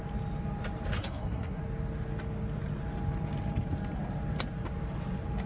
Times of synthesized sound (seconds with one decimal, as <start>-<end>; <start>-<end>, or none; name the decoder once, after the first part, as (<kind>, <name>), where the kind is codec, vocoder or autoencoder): 1.0-1.6 (codec, SNAC)